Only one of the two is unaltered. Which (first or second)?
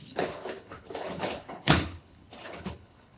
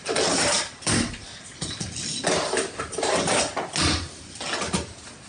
second